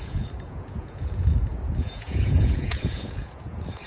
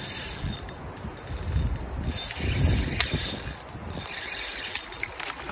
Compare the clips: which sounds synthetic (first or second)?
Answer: first